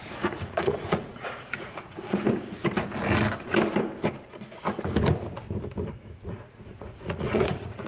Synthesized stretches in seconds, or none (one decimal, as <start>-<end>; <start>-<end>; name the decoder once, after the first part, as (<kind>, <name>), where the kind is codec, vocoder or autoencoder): 0.0-2.2 (vocoder, Vocos); 6.0-7.9